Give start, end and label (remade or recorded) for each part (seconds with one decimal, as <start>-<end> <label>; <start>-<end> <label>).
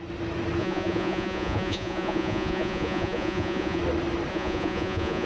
0.0-0.6 recorded; 0.6-3.8 remade; 3.8-4.3 recorded; 4.3-5.3 remade